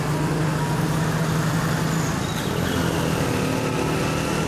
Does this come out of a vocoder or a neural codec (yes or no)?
no